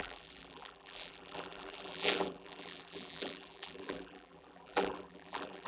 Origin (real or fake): fake